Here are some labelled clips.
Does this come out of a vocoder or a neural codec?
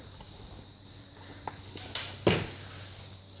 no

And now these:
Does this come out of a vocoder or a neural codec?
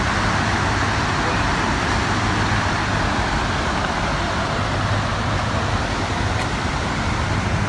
yes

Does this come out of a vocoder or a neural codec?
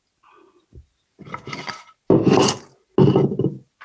no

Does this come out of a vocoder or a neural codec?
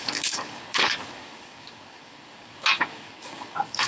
yes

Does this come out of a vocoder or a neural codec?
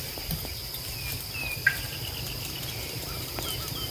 no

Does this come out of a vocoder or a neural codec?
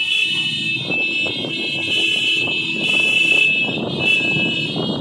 no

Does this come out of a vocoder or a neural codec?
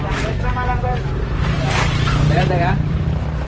yes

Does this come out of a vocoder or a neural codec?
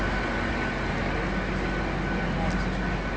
no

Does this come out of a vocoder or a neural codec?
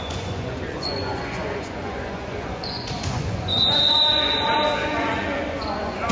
yes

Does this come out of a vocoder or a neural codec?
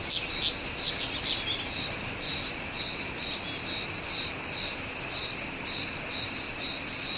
no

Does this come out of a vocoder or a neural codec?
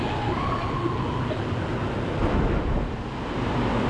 no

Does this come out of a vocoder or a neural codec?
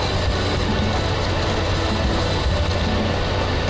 no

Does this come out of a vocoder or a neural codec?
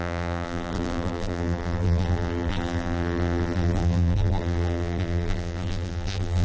yes